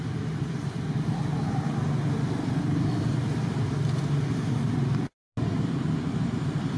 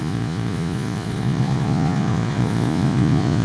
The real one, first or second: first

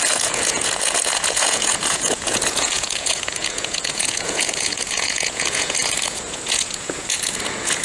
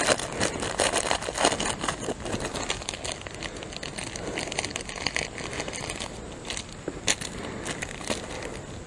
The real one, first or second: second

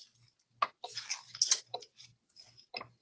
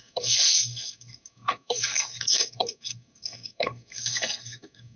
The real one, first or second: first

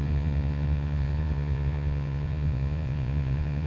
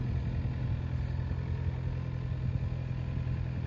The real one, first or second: second